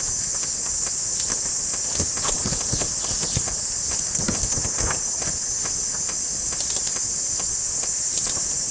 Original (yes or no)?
yes